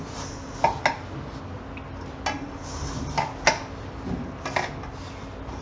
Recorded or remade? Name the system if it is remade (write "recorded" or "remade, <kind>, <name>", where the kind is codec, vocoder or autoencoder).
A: recorded